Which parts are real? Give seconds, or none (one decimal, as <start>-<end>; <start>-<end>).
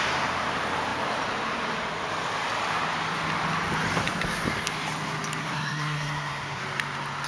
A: 0.0-5.4; 6.6-7.3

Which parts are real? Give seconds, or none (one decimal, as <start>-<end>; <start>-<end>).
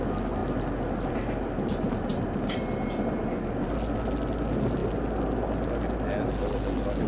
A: 0.0-7.1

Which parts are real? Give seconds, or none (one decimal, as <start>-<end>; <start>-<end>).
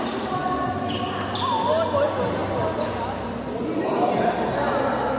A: 0.0-5.2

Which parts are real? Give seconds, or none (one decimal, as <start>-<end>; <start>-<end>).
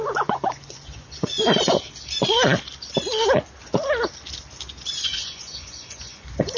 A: 1.8-4.9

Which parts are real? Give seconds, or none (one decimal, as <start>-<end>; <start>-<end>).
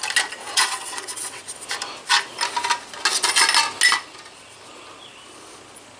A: 0.0-0.4; 1.4-6.0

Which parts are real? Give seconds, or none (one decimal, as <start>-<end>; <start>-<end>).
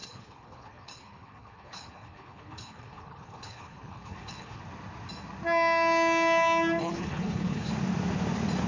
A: 4.6-6.8; 7.7-8.7